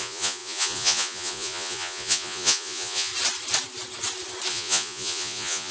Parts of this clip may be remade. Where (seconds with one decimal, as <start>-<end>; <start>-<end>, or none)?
0.0-3.1; 4.5-5.7